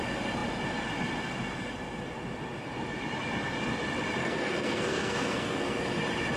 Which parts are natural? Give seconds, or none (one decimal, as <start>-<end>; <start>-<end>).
0.0-4.2; 5.8-6.4